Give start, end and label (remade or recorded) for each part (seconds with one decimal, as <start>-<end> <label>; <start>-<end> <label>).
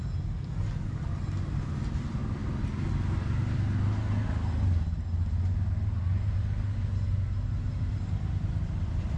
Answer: 0.0-9.2 recorded